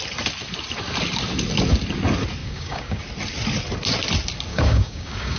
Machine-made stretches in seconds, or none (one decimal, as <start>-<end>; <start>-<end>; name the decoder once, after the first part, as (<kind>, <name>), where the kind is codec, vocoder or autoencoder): 2.4-3.0 (codec, DAC); 4.5-5.4